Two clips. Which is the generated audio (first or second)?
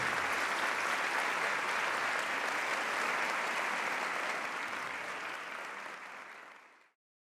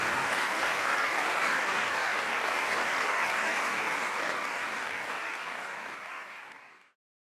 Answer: second